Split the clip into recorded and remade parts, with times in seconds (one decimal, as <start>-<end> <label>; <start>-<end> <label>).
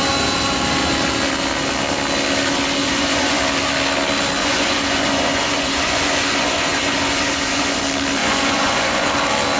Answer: 0.0-2.8 recorded; 2.8-3.4 remade; 3.4-4.4 recorded; 4.4-7.8 remade; 7.8-8.2 recorded; 8.2-9.1 remade; 9.1-9.6 recorded